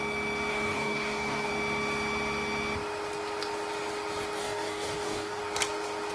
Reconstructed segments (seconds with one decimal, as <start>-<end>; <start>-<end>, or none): 0.5-1.5; 4.4-5.4